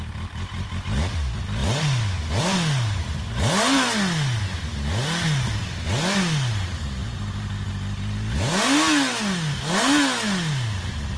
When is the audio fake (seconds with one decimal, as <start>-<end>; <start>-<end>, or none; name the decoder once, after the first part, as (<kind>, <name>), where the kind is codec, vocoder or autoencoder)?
7.0-7.7 (vocoder, BigVGAN v2)